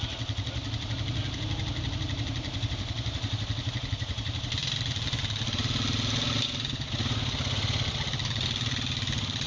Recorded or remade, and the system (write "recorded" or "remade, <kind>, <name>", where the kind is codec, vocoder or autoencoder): recorded